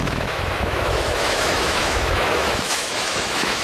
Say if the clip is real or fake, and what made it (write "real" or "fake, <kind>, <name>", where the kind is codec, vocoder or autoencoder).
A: fake, autoencoder, DAC-VAE